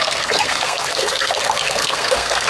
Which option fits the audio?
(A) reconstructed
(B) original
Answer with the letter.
A